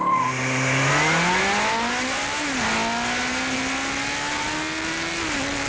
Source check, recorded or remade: recorded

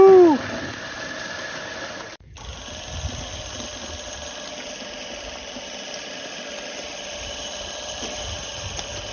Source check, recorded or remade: recorded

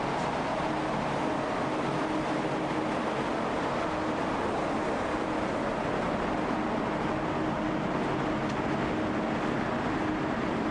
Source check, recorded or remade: recorded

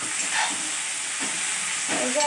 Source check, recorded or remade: recorded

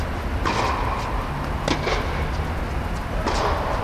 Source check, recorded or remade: recorded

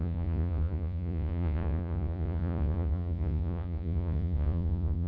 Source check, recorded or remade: remade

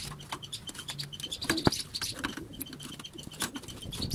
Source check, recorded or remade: recorded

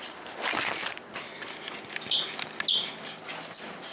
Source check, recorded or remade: recorded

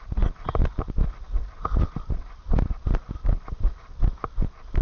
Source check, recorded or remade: recorded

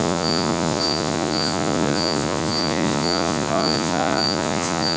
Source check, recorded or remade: remade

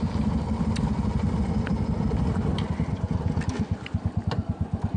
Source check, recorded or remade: recorded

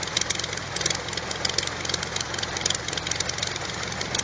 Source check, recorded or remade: recorded